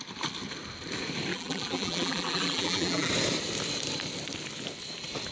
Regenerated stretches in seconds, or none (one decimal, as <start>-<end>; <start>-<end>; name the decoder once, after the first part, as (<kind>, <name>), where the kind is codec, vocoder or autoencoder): 1.3-3.1 (vocoder, BigVGAN v2)